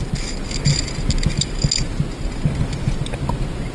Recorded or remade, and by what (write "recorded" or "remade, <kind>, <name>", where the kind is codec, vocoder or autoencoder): recorded